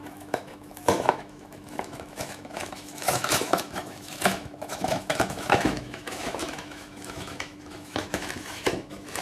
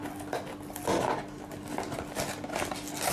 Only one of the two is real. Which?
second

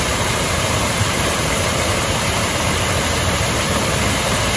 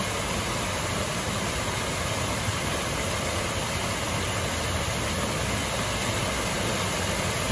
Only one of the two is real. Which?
second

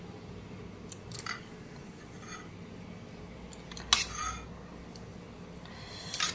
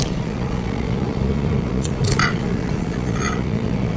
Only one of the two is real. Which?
first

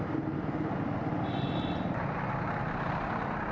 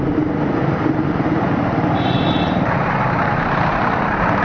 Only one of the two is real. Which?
first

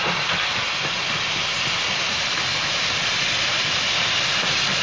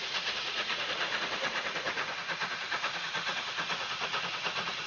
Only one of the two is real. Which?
first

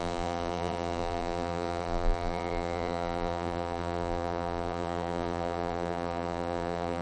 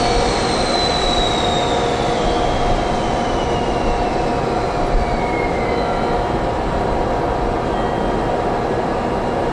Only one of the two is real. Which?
second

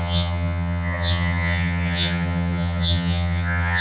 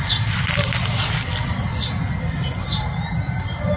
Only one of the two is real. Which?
second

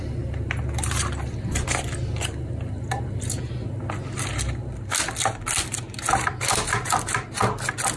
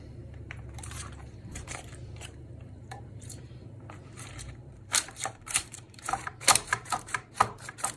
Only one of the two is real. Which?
first